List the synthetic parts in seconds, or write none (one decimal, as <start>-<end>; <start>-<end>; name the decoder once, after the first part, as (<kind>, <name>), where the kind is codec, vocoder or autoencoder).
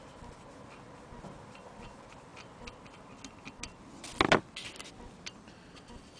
none